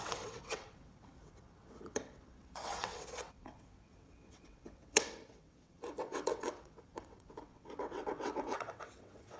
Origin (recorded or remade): remade